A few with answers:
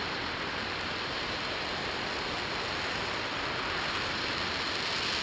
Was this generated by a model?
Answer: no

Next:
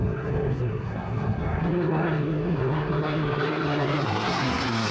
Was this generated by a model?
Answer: yes